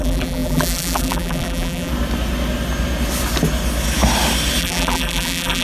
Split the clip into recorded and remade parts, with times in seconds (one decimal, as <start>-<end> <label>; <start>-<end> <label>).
0.0-1.9 remade; 1.9-4.6 recorded; 4.6-5.6 remade